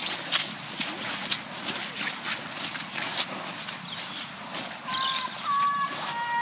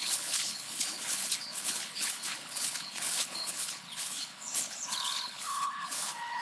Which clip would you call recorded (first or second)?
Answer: first